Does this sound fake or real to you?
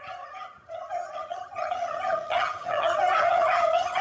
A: fake